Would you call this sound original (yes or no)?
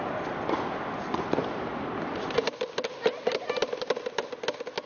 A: yes